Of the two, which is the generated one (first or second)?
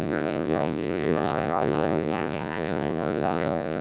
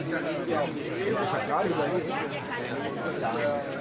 first